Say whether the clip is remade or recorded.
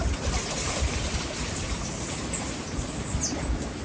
recorded